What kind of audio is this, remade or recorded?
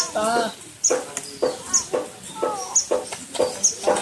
recorded